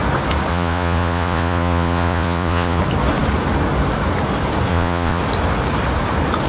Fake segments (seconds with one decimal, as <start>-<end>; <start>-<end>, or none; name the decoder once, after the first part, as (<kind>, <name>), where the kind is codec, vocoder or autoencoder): 0.5-2.8 (vocoder, Vocos); 4.7-5.2